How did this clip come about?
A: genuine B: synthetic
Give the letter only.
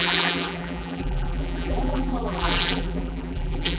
B